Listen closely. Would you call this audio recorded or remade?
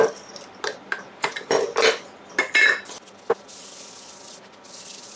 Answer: recorded